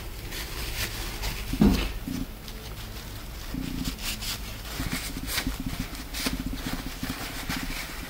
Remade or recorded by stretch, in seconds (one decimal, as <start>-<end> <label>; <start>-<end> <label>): 0.0-8.1 recorded